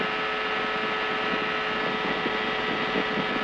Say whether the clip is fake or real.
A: real